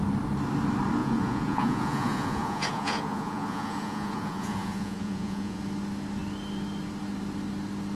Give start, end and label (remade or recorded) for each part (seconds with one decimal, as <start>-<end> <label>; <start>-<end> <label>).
0.0-1.0 recorded; 1.0-5.6 remade; 5.6-7.9 recorded